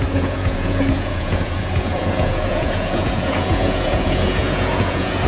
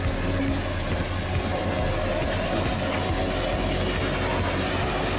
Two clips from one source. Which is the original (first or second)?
second